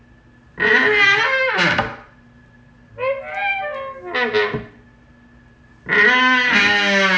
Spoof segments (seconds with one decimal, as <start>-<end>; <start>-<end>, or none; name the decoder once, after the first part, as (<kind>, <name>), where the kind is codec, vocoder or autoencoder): none